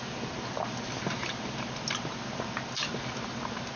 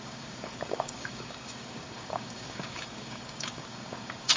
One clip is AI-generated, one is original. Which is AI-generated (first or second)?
second